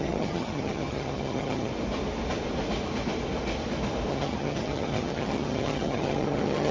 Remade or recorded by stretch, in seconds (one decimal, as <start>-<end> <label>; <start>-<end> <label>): 0.0-1.7 remade; 1.7-4.1 recorded; 4.1-6.7 remade